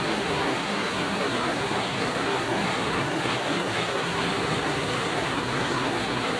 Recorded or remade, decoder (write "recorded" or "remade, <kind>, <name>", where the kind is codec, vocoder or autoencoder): remade, codec, SNAC